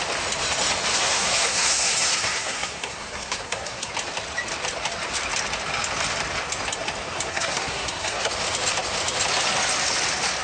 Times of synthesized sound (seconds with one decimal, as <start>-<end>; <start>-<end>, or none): 0.9-3.9; 7.3-8.3